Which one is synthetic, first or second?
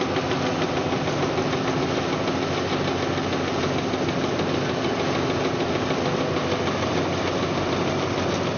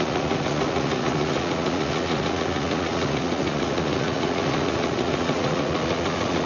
second